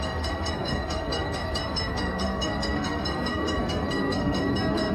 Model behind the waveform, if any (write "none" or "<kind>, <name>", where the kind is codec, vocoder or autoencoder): codec, SNAC